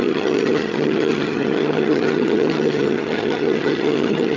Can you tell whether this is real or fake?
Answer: fake